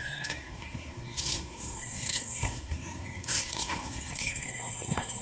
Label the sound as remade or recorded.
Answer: remade